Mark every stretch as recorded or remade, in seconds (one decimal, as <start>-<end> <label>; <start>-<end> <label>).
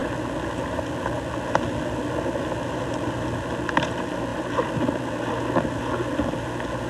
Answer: 0.0-4.3 recorded; 4.3-5.8 remade; 5.8-6.9 recorded